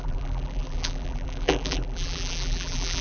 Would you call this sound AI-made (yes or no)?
yes